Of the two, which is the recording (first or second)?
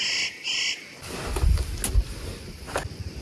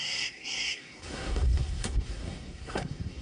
first